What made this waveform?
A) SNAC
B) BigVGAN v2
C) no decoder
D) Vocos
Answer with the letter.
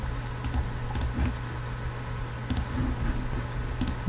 C